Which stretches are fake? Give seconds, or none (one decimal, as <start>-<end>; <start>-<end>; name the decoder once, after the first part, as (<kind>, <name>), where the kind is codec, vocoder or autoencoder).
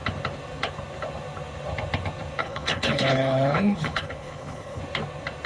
2.4-4.8 (codec, HILCodec)